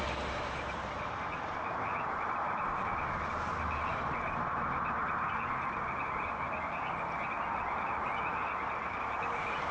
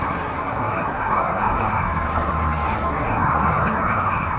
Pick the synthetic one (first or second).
second